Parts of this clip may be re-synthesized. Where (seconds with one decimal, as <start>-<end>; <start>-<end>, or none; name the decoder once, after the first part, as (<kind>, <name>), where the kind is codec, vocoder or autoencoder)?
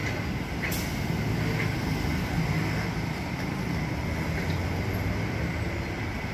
none